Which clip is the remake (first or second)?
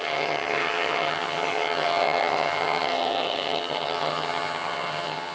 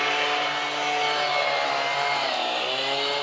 first